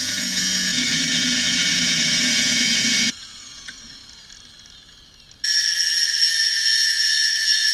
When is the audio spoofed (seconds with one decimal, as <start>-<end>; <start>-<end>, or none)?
0.0-4.0; 6.4-7.7